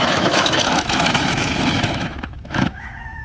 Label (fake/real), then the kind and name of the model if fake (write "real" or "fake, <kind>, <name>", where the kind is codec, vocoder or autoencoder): fake, autoencoder, DAC-VAE